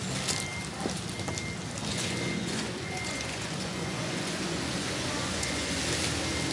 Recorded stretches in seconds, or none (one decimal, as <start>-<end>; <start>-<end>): 0.0-1.9; 5.8-6.5